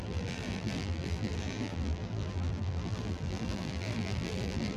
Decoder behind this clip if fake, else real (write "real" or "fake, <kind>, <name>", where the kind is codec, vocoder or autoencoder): fake, vocoder, BigVGAN v2